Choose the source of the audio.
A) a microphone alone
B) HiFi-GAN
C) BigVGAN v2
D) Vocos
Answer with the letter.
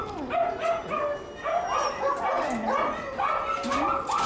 A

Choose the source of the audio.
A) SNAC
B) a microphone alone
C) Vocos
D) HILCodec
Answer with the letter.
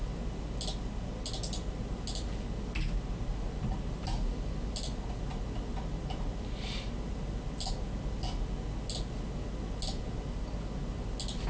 B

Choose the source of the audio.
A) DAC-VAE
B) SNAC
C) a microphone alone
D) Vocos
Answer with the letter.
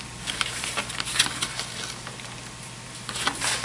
C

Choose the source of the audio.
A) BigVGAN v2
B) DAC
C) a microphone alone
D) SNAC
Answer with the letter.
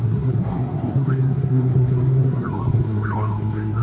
D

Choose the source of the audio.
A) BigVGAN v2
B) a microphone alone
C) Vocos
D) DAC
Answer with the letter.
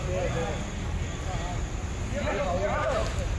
B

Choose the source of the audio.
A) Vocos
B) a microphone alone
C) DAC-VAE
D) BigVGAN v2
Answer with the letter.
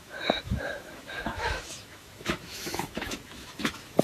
C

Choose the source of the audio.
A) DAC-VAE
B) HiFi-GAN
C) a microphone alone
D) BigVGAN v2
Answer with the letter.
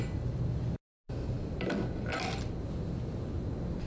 C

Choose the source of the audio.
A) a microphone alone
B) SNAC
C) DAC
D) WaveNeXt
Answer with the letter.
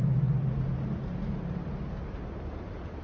A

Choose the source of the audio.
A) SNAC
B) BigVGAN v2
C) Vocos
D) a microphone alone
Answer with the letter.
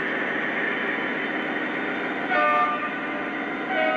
D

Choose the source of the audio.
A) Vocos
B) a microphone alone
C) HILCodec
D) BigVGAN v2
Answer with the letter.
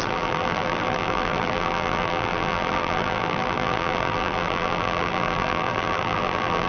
D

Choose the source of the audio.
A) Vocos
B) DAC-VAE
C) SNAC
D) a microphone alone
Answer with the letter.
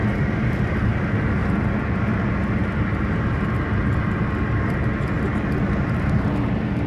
D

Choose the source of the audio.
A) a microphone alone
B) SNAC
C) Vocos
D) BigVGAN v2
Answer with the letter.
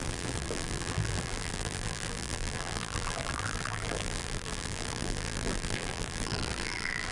D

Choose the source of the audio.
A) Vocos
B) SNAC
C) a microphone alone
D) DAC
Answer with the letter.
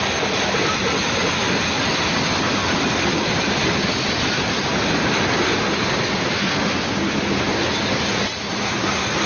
C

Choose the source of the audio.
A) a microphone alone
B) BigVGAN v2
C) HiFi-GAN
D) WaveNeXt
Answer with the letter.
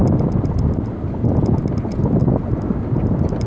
A